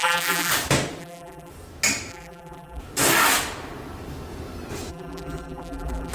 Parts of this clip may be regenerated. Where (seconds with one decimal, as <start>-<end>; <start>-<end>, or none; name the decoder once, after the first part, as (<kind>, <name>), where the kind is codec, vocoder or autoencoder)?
0.0-0.5 (vocoder, BigVGAN v2); 1.0-1.5; 2.1-2.8; 4.9-6.1